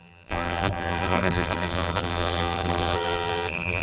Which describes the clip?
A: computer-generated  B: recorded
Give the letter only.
A